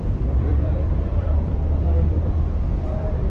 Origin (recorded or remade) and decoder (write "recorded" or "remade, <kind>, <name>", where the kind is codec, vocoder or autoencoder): remade, vocoder, BigVGAN v2